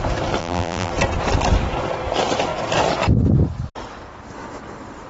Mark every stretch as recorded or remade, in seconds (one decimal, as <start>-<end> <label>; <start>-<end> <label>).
0.0-0.4 recorded; 0.4-0.9 remade; 0.9-5.1 recorded